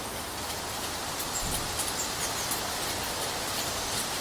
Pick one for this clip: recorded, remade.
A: recorded